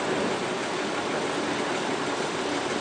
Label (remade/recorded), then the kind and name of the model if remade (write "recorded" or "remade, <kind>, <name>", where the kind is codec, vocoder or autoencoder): remade, vocoder, BigVGAN v2